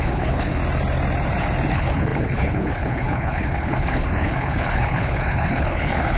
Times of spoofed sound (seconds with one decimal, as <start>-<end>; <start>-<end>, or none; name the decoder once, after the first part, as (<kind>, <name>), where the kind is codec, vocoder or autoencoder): 0.0-0.6 (codec, HILCodec); 1.7-6.2